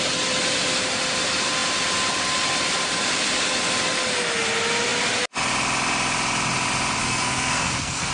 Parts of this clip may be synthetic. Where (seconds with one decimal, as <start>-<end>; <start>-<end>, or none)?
7.0-8.1